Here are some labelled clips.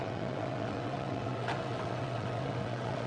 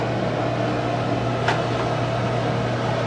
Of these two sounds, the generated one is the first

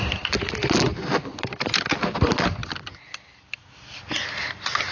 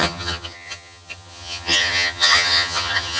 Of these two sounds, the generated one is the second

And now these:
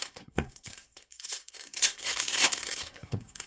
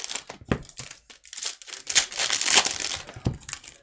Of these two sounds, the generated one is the first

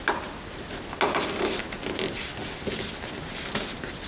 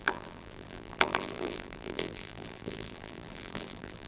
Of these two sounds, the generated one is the second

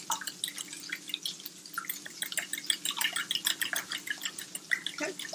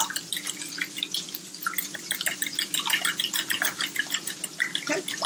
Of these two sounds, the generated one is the second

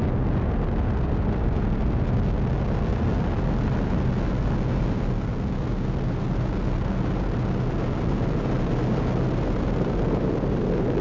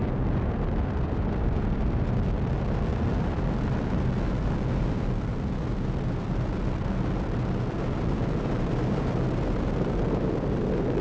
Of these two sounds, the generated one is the second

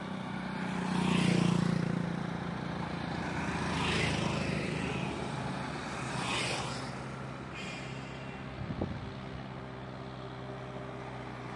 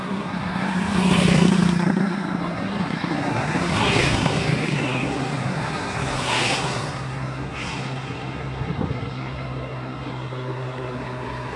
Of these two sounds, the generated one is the second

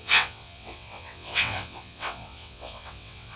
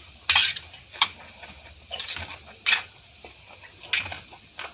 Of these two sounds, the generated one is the first